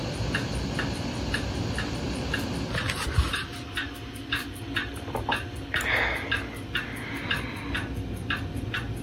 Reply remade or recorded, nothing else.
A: recorded